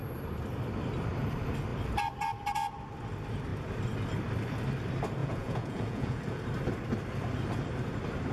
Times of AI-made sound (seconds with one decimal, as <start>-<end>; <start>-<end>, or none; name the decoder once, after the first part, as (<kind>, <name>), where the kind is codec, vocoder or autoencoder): 5.2-6.2 (vocoder, Vocos)